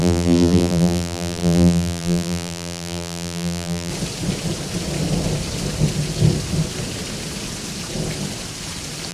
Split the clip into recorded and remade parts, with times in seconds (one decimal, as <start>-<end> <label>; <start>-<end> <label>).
0.0-3.9 remade; 3.9-9.1 recorded